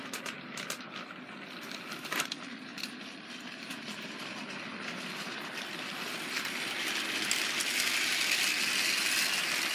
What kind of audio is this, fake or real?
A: real